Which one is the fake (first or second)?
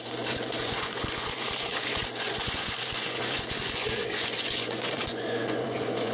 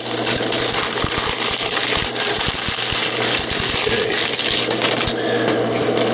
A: first